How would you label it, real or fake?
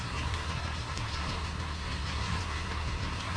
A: fake